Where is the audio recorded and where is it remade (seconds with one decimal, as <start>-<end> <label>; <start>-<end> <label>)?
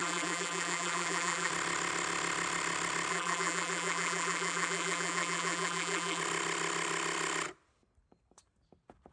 0.0-1.5 remade; 1.5-3.1 recorded; 3.1-6.2 remade; 6.2-9.1 recorded